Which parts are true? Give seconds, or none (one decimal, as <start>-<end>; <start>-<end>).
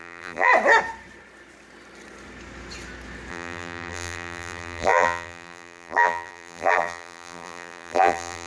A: 0.5-3.3